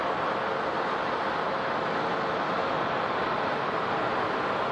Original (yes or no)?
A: yes